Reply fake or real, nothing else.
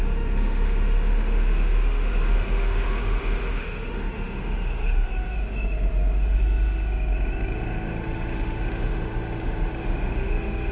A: fake